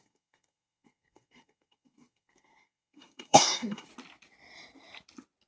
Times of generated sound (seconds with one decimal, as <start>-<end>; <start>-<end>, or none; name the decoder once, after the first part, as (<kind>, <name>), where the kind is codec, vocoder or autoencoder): 0.0-3.9 (codec, SNAC)